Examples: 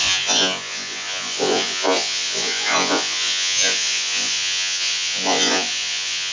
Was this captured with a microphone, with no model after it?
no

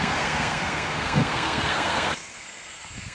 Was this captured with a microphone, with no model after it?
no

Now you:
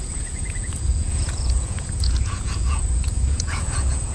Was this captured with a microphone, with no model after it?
no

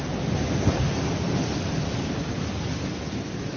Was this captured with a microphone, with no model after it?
yes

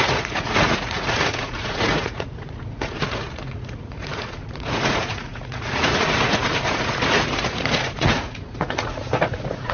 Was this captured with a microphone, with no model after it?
no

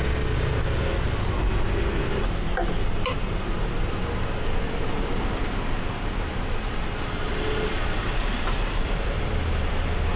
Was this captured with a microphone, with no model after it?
yes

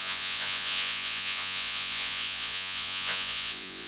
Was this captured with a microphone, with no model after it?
no